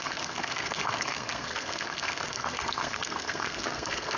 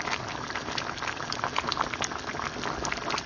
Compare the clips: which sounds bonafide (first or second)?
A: second